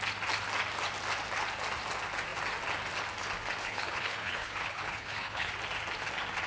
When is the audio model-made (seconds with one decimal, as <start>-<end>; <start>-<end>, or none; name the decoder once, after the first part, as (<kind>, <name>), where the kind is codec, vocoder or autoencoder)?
3.6-5.5 (codec, HILCodec)